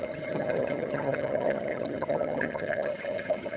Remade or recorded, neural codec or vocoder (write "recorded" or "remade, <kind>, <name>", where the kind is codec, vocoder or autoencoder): remade, vocoder, HiFi-GAN